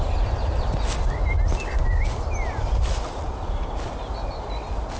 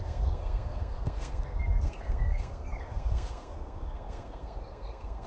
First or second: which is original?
first